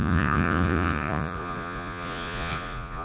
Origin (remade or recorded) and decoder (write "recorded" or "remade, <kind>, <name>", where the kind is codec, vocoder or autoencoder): remade, vocoder, Vocos